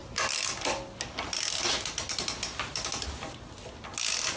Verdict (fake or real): real